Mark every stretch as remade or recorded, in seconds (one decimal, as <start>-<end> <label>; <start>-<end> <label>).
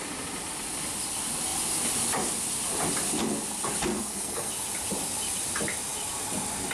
0.0-3.9 recorded; 3.9-4.5 remade; 4.5-6.7 recorded